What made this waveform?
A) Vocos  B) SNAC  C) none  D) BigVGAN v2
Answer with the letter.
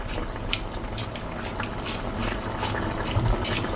C